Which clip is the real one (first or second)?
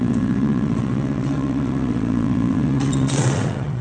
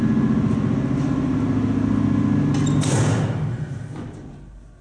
second